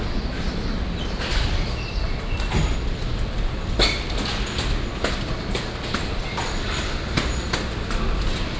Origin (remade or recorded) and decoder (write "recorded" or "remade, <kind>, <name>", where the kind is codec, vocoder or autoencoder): recorded